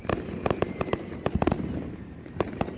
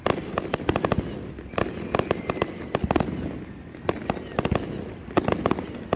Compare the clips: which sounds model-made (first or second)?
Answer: first